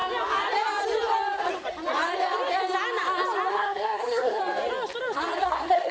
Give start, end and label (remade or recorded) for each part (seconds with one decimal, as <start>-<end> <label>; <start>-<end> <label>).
0.0-3.5 recorded; 3.5-4.4 remade; 4.4-5.4 recorded; 5.4-5.9 remade